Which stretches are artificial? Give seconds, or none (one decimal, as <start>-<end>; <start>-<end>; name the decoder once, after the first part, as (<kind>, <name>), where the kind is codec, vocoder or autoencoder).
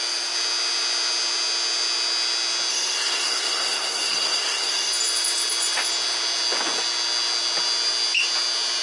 2.7-4.9 (codec, SNAC)